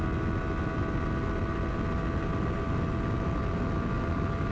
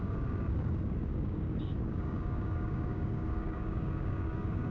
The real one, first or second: first